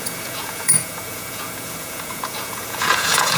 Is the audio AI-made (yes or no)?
yes